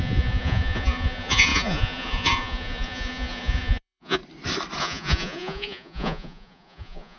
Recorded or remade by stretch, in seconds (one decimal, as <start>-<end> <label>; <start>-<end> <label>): 0.0-4.2 remade; 4.2-4.8 recorded; 4.8-7.2 remade